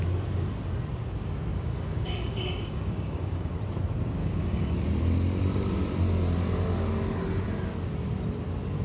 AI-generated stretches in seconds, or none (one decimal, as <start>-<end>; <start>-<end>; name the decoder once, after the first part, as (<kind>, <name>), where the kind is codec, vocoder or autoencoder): 1.5-3.6 (codec, DAC); 4.2-4.8